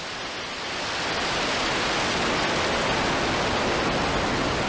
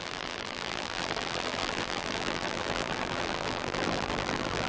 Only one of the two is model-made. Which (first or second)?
second